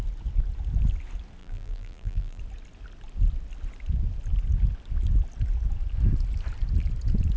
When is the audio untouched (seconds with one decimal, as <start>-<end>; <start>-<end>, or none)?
0.0-1.4; 2.4-7.4